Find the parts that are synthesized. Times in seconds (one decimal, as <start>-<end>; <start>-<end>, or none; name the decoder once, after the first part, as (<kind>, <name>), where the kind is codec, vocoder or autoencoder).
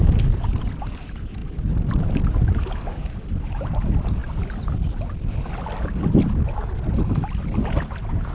1.4-3.6 (vocoder, BigVGAN v2)